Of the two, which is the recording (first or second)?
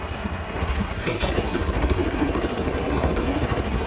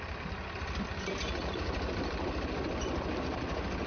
second